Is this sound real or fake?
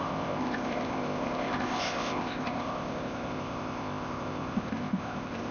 fake